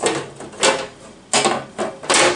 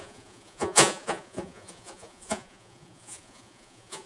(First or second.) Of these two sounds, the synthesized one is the second